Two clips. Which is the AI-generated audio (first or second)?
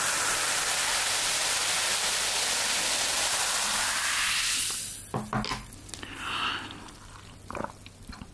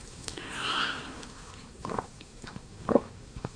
second